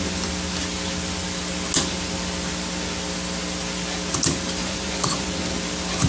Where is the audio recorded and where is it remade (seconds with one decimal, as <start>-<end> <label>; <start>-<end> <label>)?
0.0-4.6 recorded; 4.6-5.4 remade; 5.4-6.1 recorded